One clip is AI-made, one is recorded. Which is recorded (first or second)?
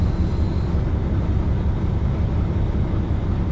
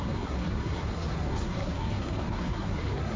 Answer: first